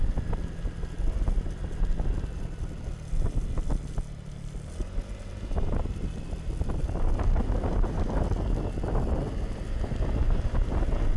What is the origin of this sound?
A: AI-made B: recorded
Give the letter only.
B